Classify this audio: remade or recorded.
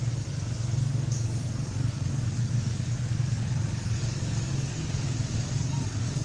remade